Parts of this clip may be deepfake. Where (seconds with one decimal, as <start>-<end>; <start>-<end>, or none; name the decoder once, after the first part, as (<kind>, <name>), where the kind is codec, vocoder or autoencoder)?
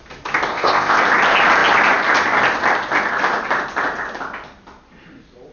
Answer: 0.5-1.0 (codec, ZipCodec)